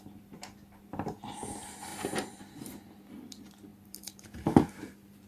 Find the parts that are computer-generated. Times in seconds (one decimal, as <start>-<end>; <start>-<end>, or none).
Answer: 1.9-2.4; 3.7-5.3